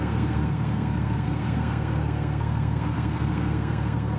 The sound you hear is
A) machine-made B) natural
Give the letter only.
A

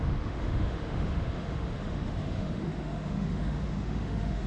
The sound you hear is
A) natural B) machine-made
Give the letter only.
B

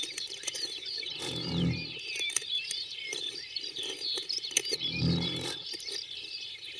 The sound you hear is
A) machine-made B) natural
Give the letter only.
A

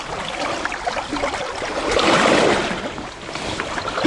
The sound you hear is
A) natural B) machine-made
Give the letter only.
A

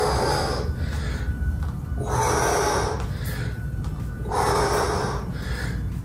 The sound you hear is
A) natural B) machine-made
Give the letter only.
A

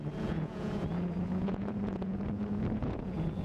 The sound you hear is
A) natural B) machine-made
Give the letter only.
B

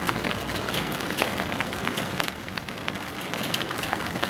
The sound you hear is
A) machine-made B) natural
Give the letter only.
A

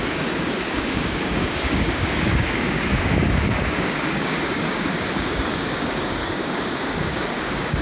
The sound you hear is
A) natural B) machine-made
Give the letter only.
B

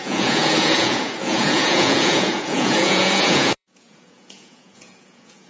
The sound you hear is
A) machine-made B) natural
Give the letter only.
A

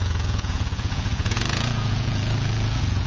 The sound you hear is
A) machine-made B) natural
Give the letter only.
A